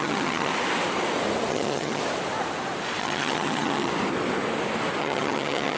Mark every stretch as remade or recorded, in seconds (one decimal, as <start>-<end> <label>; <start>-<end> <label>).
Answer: 0.0-0.5 remade; 0.5-1.5 recorded; 1.5-2.0 remade; 2.0-3.0 recorded; 3.0-3.9 remade; 3.9-5.0 recorded; 5.0-5.8 remade